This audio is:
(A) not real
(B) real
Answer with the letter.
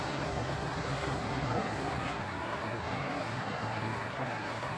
A